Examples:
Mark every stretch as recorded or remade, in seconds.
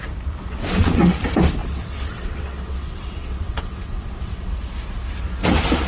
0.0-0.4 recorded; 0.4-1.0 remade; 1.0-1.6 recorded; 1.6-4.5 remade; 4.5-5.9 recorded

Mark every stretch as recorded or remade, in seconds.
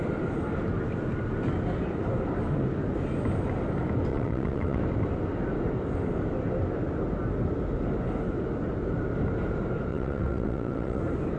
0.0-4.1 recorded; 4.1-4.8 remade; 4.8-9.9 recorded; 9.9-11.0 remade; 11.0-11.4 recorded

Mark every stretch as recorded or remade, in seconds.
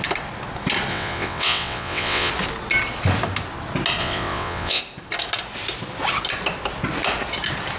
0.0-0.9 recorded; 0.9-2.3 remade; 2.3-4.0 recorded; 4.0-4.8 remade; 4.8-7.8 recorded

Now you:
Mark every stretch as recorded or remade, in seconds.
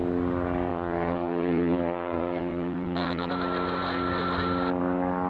0.0-0.7 recorded; 0.7-3.3 remade; 3.3-5.3 recorded